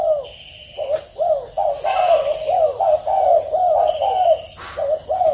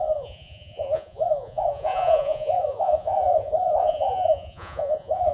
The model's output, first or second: second